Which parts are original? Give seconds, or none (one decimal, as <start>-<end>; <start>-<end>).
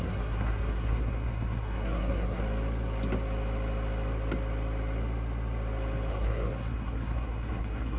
2.4-6.1